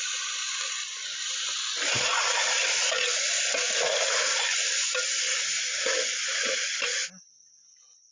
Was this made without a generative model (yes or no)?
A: yes